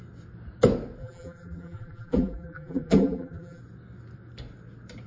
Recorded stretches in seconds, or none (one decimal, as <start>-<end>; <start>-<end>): 0.0-1.0; 3.6-5.1